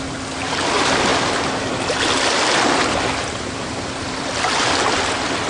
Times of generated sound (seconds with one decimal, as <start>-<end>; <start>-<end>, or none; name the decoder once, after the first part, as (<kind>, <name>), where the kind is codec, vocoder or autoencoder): none